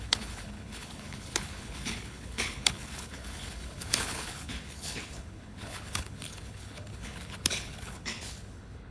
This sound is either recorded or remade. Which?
remade